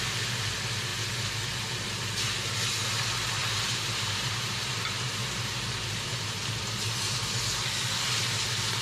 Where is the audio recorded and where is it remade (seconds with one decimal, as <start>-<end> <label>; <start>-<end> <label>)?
0.0-3.4 recorded; 3.4-6.9 remade; 6.9-8.8 recorded